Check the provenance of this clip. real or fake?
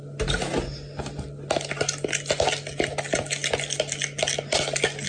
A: real